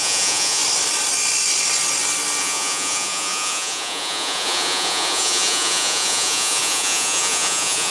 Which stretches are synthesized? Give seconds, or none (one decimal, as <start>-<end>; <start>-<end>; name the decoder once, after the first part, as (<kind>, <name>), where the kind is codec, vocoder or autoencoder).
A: 0.0-0.6 (vocoder, Vocos); 2.4-7.9

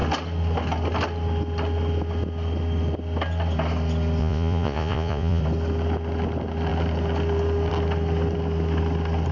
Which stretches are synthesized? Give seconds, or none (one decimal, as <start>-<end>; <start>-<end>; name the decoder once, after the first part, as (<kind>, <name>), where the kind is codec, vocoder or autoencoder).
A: 4.2-5.4 (vocoder, Vocos)

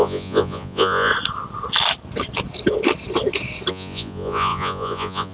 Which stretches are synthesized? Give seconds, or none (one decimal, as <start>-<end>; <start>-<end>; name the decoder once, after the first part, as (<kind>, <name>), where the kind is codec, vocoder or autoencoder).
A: 0.0-1.1 (vocoder, Vocos); 3.7-5.3

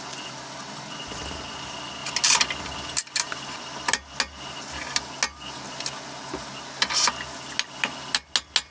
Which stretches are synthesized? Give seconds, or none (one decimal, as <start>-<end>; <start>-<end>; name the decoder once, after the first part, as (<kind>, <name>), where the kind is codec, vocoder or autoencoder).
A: none

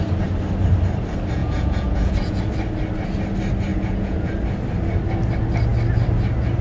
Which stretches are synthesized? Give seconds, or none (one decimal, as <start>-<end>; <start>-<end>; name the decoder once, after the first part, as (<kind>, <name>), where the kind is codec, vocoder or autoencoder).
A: 1.4-2.4 (vocoder, Vocos); 3.7-4.3

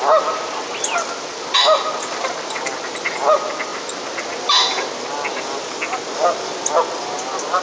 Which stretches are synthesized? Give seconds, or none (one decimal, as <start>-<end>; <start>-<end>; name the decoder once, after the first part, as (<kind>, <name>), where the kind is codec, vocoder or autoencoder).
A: none

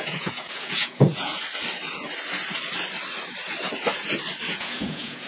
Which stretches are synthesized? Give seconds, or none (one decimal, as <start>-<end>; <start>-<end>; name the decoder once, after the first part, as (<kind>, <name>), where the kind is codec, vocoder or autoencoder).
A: 0.0-1.3 (vocoder, Vocos); 4.5-5.3

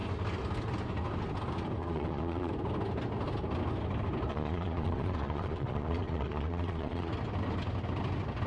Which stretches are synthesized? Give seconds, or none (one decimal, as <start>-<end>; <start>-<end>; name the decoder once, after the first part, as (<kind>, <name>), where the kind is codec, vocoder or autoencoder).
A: 1.8-2.5 (vocoder, Vocos); 4.3-7.1